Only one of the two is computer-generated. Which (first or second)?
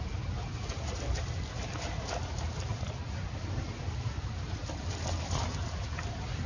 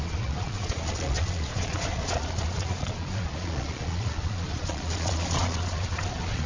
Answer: second